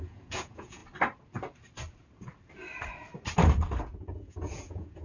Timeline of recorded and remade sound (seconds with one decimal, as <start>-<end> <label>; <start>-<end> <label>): 0.0-0.8 remade; 0.8-3.8 recorded; 3.8-5.0 remade